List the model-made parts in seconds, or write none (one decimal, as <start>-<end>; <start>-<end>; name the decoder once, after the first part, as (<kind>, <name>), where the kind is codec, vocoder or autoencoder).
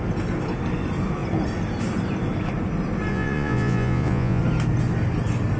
3.1-4.4 (vocoder, Vocos)